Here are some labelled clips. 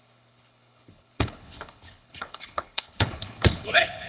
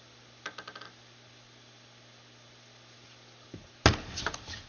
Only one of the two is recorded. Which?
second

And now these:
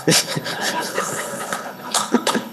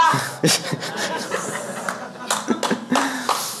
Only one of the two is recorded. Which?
second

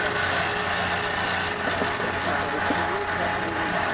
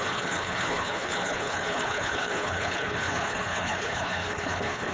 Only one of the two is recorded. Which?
first